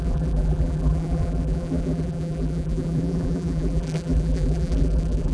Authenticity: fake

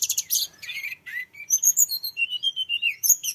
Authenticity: fake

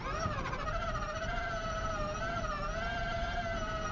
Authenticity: real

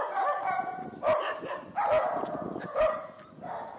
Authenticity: real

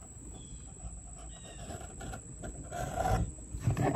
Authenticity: real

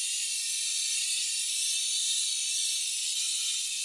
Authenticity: real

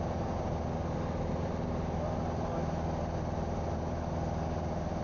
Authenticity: real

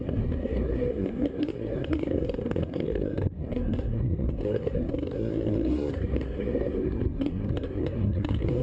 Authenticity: fake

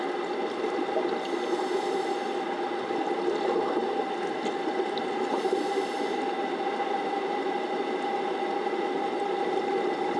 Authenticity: real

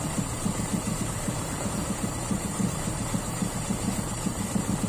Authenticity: fake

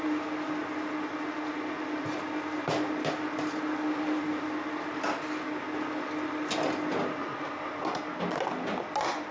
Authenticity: real